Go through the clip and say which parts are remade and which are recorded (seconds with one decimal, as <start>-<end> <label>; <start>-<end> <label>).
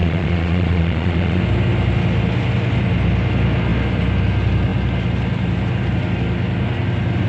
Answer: 0.0-1.4 remade; 1.4-7.3 recorded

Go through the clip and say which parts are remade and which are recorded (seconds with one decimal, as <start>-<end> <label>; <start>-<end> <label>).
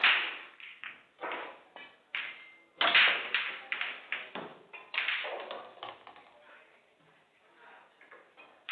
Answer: 0.0-2.5 remade; 2.5-3.2 recorded; 3.2-8.7 remade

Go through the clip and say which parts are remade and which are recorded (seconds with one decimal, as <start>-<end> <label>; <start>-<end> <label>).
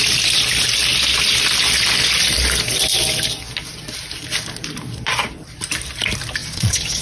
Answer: 0.0-6.4 recorded; 6.4-7.0 remade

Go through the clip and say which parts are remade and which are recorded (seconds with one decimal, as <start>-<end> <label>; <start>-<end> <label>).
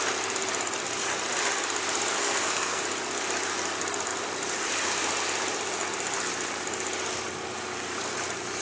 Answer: 0.0-2.1 recorded; 2.1-2.8 remade; 2.8-8.6 recorded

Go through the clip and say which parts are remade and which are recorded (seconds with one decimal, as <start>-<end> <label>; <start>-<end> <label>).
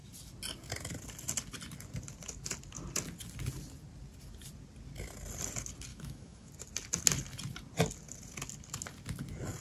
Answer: 0.0-5.9 recorded; 5.9-6.5 remade; 6.5-9.6 recorded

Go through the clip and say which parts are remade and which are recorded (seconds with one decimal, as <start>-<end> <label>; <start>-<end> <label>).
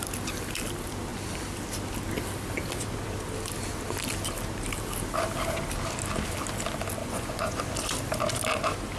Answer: 0.0-7.0 recorded; 7.0-7.6 remade; 7.6-9.0 recorded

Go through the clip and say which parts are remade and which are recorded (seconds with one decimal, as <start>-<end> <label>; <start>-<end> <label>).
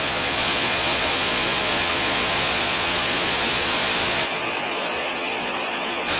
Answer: 0.0-6.2 remade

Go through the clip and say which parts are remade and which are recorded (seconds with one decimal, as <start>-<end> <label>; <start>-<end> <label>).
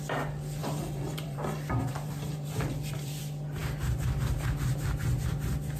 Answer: 0.0-0.6 recorded; 0.6-3.2 remade; 3.2-5.8 recorded